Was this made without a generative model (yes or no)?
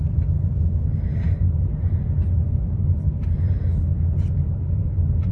yes